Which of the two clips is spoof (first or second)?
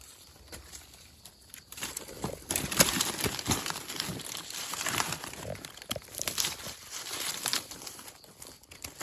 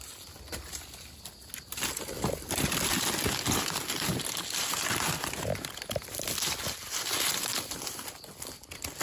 first